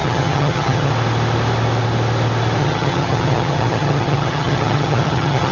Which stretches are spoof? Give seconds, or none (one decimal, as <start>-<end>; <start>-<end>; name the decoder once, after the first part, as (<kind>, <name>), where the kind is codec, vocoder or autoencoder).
0.0-0.9 (vocoder, HiFi-GAN); 2.6-5.5